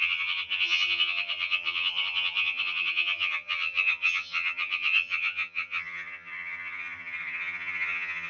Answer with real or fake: fake